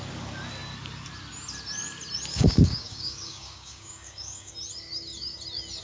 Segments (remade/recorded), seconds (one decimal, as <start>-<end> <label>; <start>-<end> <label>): 0.0-2.3 recorded; 2.3-4.5 remade; 4.5-5.8 recorded